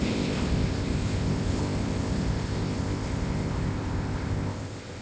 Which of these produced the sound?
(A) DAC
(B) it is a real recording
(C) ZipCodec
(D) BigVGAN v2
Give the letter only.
C